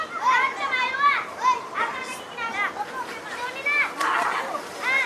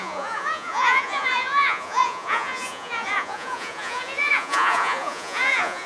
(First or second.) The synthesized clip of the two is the second